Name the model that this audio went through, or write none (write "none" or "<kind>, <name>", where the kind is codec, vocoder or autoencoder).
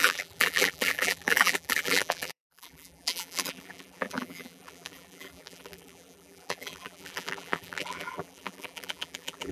vocoder, BigVGAN v2